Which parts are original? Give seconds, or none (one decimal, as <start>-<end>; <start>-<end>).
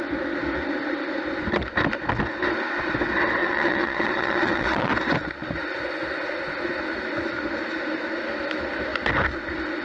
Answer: 0.0-3.4; 4.9-9.8